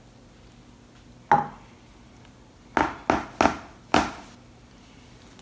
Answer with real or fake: real